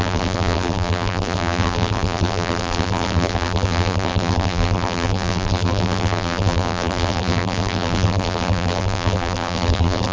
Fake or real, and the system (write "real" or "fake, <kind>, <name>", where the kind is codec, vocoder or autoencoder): fake, vocoder, BigVGAN v2